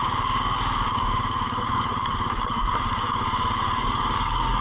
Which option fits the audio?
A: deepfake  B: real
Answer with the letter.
A